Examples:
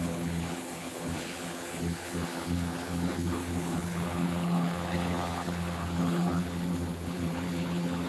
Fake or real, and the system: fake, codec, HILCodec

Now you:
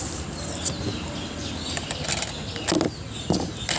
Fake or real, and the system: real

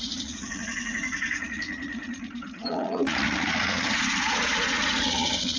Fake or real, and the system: fake, vocoder, Vocos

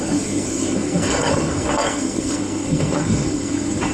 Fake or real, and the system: fake, codec, SNAC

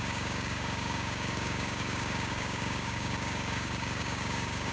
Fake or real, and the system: fake, codec, DAC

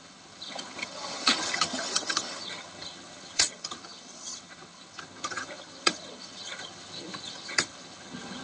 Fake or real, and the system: fake, vocoder, HiFi-GAN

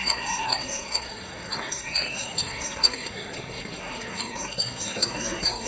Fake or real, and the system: fake, codec, SNAC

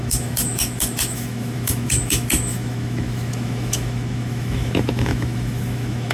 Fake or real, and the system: fake, autoencoder, DAC-VAE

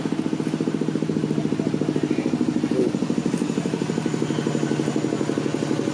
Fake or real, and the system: real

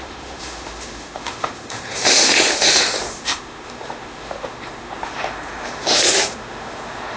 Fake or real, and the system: fake, autoencoder, DAC-VAE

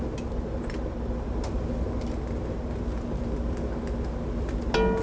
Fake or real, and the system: real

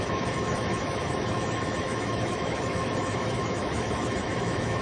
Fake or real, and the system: fake, autoencoder, DAC-VAE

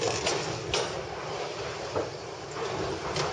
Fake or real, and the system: real